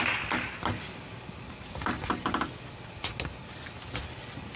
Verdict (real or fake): real